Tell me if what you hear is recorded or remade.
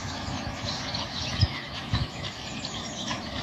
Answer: remade